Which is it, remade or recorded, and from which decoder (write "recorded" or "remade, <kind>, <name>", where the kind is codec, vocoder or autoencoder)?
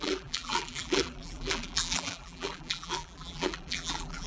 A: remade, vocoder, BigVGAN v2